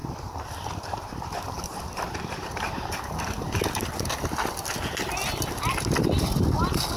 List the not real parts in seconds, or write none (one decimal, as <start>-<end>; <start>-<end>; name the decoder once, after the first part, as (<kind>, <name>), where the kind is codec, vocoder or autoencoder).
0.0-3.6 (vocoder, BigVGAN v2)